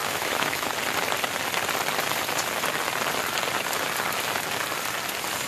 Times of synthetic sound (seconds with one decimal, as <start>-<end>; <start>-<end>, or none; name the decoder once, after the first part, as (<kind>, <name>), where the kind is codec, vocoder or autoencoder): 0.0-0.7 (autoencoder, DAC-VAE)